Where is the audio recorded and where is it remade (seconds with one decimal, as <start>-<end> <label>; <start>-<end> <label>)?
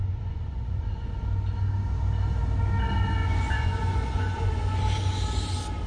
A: 0.0-1.1 remade; 1.1-3.2 recorded; 3.2-4.8 remade; 4.8-5.9 recorded